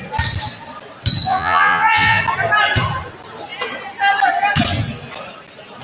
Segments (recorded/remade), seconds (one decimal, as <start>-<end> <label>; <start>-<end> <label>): 0.0-1.3 recorded; 1.3-2.2 remade; 2.2-5.8 recorded